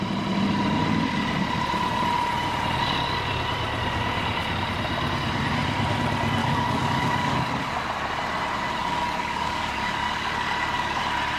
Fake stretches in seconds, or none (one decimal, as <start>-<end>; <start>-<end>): 6.4-7.9; 8.8-11.0